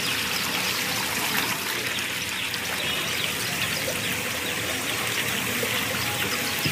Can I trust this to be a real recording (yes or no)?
yes